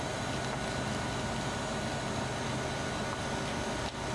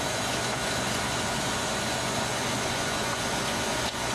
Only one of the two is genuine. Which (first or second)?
first